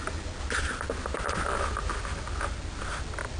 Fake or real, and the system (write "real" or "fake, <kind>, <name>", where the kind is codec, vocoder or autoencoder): real